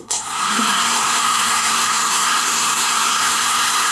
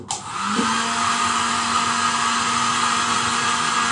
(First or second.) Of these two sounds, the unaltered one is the second